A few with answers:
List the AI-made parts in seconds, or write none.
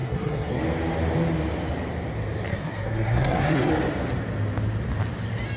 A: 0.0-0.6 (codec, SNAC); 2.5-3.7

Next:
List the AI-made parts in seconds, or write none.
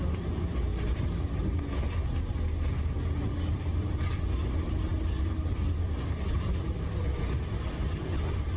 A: none